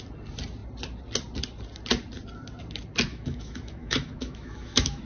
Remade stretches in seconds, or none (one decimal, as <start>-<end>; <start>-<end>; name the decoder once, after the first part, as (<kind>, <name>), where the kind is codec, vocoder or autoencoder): 3.1-5.0 (autoencoder, DAC-VAE)